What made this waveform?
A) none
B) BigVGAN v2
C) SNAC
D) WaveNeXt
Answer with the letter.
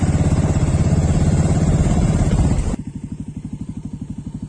B